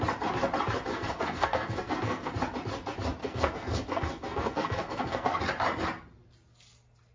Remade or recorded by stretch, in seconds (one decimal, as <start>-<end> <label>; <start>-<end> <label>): 0.0-0.9 recorded; 0.9-2.3 remade; 2.3-3.2 recorded; 3.2-5.4 remade; 5.4-7.1 recorded